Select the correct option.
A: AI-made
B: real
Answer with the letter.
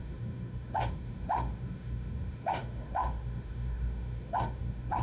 A